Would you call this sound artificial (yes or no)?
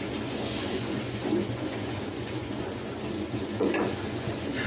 yes